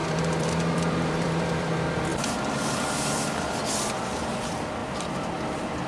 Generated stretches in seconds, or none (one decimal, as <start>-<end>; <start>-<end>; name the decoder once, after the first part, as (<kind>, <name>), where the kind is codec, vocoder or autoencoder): 0.0-1.7 (vocoder, BigVGAN v2); 2.1-4.3